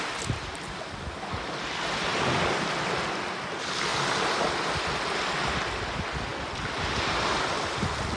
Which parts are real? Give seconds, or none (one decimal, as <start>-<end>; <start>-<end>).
0.0-8.2